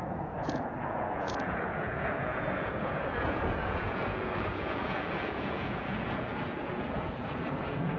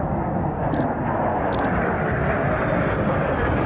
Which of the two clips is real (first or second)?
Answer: second